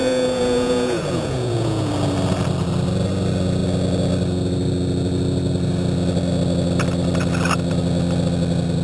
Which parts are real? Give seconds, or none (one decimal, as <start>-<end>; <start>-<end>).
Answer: 1.9-8.8